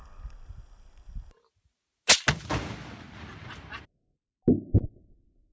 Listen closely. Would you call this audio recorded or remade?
recorded